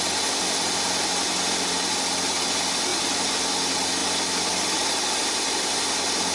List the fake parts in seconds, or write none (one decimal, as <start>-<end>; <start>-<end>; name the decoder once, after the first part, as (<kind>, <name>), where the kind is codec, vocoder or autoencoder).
2.9-3.4 (vocoder, BigVGAN v2)